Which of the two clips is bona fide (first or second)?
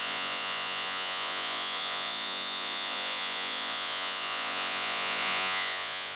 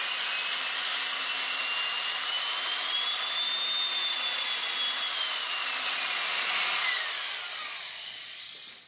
second